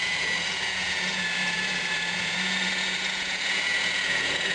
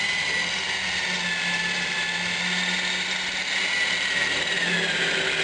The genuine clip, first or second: second